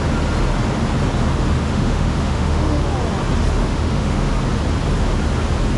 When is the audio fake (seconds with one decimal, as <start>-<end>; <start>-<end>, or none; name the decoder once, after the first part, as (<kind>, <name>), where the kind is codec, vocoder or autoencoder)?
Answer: 1.7-2.8 (autoencoder, DAC-VAE); 3.6-4.3